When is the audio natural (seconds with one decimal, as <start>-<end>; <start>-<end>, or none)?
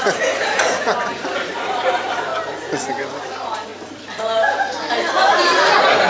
2.3-2.9; 3.7-6.1